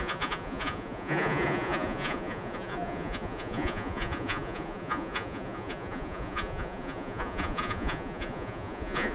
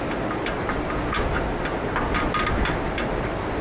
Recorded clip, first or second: second